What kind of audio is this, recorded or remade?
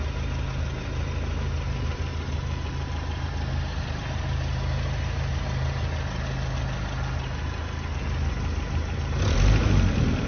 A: recorded